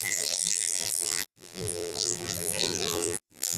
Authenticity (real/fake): fake